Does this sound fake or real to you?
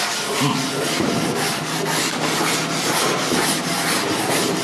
real